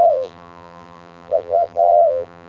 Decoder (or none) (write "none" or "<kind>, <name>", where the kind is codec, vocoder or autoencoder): vocoder, BigVGAN v2